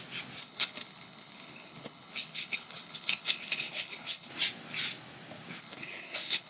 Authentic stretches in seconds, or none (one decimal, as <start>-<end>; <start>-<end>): 0.0-0.4; 4.3-5.6